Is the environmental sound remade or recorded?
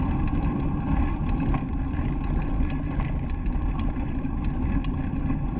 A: recorded